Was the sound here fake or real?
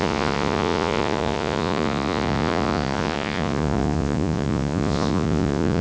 fake